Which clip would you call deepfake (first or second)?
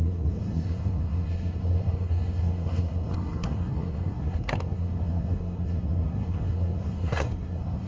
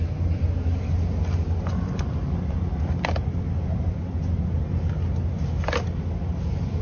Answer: first